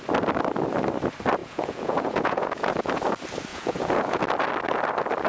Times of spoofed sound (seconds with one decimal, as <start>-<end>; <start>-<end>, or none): 1.4-3.0; 3.5-4.2